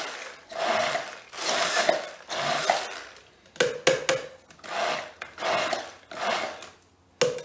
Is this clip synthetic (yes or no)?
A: no